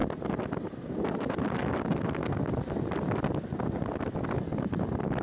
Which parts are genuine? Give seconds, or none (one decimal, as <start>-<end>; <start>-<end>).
0.0-5.2